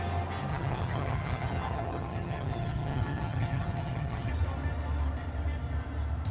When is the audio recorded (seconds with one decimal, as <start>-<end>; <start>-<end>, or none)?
0.0-0.5; 4.3-6.3